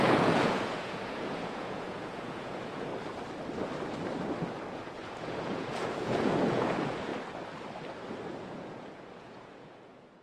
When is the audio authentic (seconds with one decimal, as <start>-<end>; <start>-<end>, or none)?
2.9-4.7; 7.1-8.4

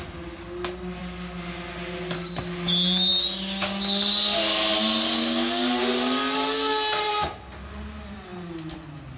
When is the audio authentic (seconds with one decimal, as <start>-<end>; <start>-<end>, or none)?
0.0-9.2

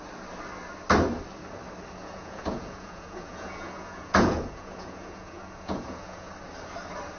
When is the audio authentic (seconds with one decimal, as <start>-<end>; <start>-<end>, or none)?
0.0-2.0; 6.3-7.2

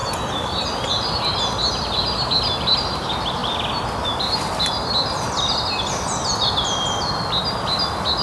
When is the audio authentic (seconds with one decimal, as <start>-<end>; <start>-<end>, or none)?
0.0-8.2